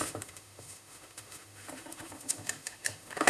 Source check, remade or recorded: remade